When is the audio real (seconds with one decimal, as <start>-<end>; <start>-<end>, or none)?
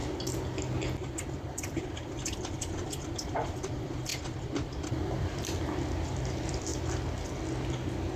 0.0-1.2; 4.1-4.9; 6.7-8.2